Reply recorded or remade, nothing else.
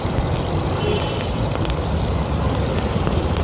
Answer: remade